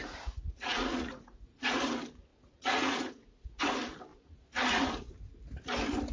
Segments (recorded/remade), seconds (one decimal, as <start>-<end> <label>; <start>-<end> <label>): 0.0-1.8 remade; 1.8-2.3 recorded; 2.3-3.6 remade; 3.6-4.1 recorded; 4.1-4.9 remade; 4.9-6.1 recorded